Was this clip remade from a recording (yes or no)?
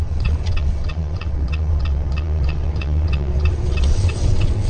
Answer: yes